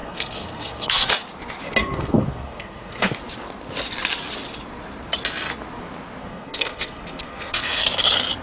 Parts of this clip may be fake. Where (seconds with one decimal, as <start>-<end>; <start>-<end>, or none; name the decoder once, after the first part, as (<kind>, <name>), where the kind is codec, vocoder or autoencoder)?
0.0-1.1 (codec, SNAC); 1.8-3.1; 6.2-7.8

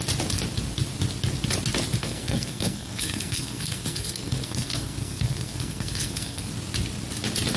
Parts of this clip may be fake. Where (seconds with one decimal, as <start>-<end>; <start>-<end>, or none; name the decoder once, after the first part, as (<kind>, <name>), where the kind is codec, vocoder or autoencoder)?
2.0-6.5 (codec, SNAC)

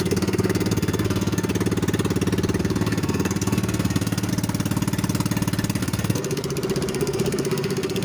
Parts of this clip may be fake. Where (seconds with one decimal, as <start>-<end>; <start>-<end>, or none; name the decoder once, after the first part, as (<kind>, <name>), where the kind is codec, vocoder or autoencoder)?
0.0-1.5 (codec, SNAC); 2.6-4.3; 5.8-6.4; 6.9-8.0

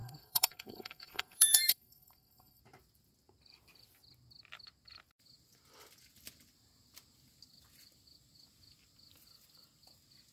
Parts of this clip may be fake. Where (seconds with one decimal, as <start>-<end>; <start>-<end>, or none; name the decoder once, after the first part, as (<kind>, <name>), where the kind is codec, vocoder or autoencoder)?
0.0-2.6 (codec, SNAC)

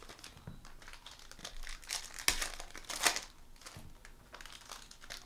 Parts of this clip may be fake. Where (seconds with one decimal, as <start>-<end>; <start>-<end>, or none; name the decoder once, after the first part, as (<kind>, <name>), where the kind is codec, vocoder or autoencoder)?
none

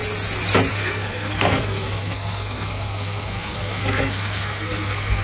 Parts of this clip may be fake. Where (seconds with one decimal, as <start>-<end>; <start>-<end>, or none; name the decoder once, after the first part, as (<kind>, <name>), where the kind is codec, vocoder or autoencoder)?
0.7-5.2 (codec, SNAC)

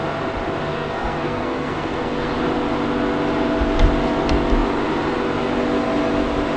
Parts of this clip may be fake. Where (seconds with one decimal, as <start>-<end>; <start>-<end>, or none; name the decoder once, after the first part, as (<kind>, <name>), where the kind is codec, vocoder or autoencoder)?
0.7-2.3 (codec, SNAC)